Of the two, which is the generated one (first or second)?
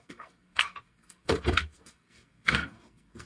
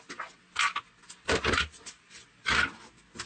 first